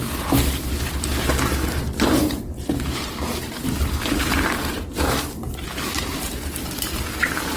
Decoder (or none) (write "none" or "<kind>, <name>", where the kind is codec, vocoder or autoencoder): vocoder, BigVGAN v2